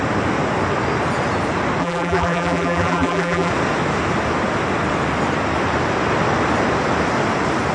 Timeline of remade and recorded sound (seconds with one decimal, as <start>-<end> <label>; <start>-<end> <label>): 0.0-1.8 recorded; 1.8-3.5 remade; 3.5-7.7 recorded